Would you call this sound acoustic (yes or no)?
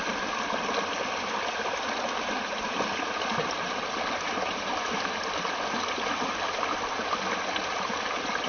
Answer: yes